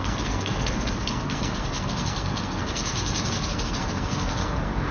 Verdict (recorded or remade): remade